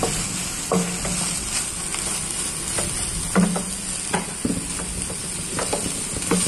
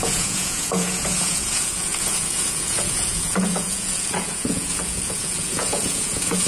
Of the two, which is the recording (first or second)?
first